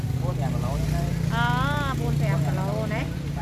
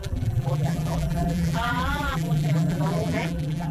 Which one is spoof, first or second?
second